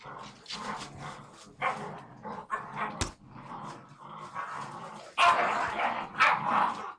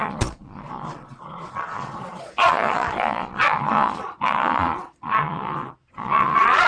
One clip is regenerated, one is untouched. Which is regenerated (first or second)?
second